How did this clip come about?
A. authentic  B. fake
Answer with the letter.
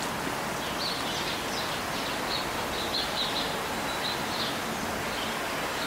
A